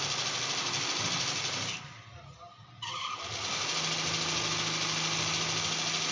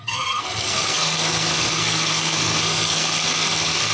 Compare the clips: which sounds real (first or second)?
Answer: first